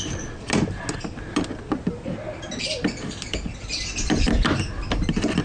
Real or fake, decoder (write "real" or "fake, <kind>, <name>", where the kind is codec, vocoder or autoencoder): real